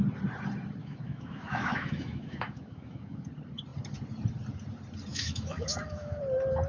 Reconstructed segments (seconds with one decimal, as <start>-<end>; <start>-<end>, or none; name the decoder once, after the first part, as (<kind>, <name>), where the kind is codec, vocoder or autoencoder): 0.8-3.3 (autoencoder, DAC-VAE); 5.1-6.2